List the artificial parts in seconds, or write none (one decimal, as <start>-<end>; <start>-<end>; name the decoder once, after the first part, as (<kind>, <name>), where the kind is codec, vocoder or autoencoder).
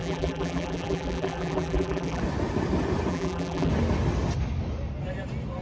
0.0-2.2 (vocoder, BigVGAN v2); 3.1-3.7